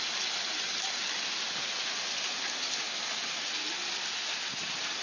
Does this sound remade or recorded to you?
recorded